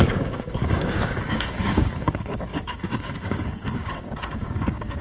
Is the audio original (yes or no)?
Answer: no